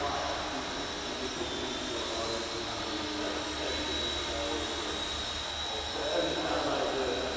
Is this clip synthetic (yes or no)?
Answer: no